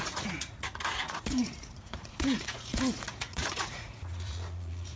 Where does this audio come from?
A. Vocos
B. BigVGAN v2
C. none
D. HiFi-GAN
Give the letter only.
A